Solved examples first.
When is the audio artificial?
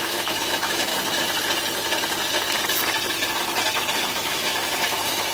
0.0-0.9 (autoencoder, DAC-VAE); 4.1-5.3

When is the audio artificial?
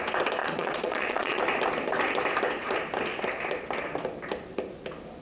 0.4-1.4 (vocoder, Vocos)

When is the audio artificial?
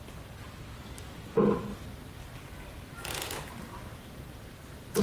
1.7-5.0 (vocoder, BigVGAN v2)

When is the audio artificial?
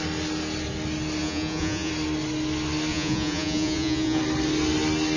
1.2-1.9 (vocoder, Vocos); 2.9-4.2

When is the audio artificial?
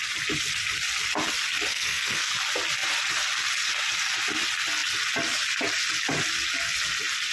1.7-2.3 (codec, SNAC)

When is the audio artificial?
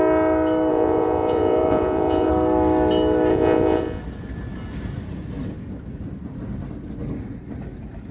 0.7-2.3 (vocoder, Vocos); 3.3-4.0